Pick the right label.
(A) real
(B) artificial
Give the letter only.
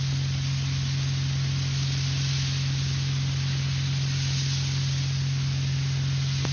A